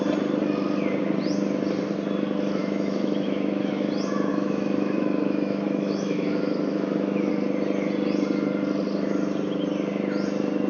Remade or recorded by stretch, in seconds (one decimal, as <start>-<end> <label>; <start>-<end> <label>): 0.0-2.6 recorded; 2.6-3.9 remade; 3.9-4.3 recorded; 4.3-7.3 remade; 7.3-10.7 recorded